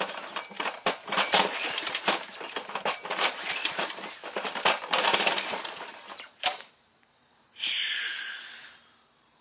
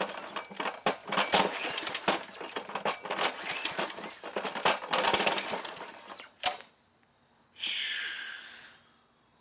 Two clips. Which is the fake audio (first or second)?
first